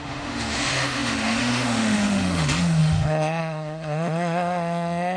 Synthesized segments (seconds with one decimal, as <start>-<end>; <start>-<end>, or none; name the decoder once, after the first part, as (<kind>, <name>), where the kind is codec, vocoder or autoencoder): 0.0-5.2 (autoencoder, DAC-VAE)